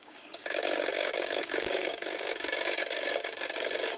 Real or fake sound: fake